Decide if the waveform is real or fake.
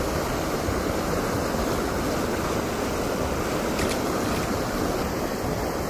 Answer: real